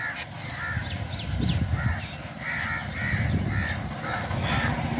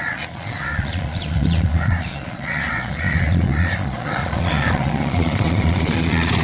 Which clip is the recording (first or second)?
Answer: first